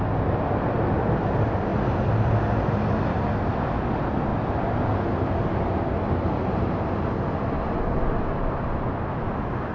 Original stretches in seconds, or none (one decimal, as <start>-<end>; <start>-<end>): 0.0-9.7